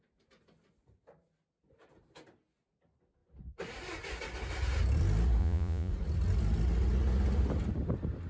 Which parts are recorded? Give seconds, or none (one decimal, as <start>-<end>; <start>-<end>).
0.0-5.4; 5.9-8.3